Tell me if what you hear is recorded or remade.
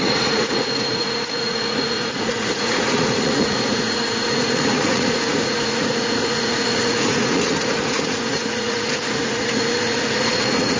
remade